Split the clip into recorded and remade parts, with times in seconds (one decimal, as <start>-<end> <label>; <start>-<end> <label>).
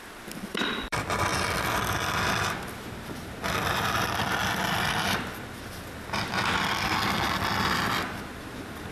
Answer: 0.0-1.3 remade; 1.3-3.6 recorded; 3.6-4.4 remade; 4.4-8.4 recorded; 8.4-8.9 remade